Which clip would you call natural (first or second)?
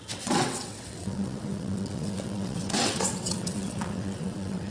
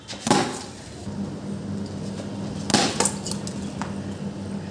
second